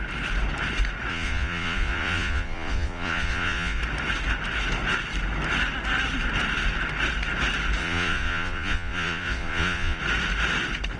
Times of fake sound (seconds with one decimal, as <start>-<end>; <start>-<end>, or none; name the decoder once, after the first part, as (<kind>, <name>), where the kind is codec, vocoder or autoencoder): 1.1-3.8 (vocoder, Vocos); 7.8-10.0